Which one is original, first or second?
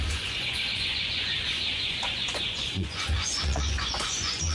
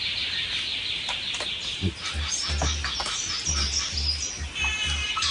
second